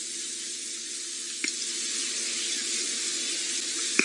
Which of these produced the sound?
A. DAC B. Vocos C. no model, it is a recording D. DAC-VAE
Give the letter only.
C